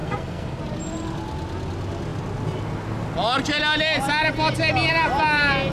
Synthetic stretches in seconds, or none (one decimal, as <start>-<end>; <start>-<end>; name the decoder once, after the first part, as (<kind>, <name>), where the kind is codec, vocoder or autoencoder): 0.0-0.6 (codec, SNAC)